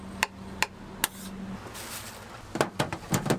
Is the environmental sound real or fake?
real